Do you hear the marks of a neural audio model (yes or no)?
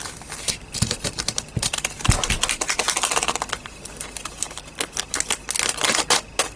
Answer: no